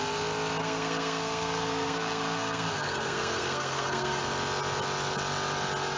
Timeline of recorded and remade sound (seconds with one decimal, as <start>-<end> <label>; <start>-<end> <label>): 0.0-0.6 recorded; 0.6-4.2 remade; 4.2-6.0 recorded